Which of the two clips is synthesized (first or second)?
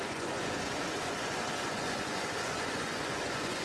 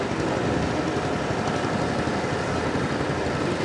first